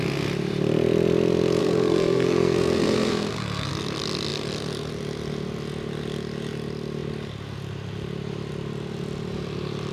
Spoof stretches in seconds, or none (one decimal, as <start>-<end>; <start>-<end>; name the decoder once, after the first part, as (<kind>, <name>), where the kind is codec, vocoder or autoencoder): 1.6-3.7 (codec, SNAC)